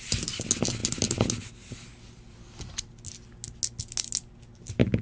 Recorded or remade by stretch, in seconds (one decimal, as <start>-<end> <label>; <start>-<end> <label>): 0.0-5.0 recorded